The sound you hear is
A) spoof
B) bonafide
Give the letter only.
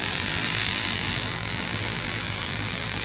A